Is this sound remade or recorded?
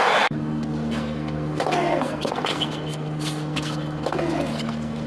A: remade